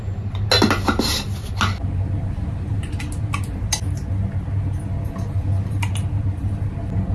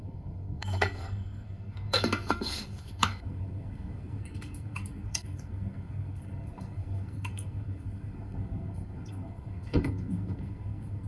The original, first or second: first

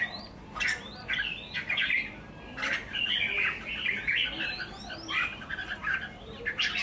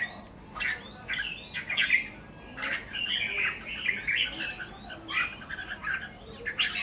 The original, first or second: second